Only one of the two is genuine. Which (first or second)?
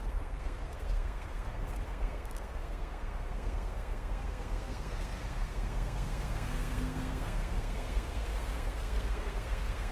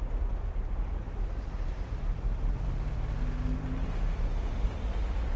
second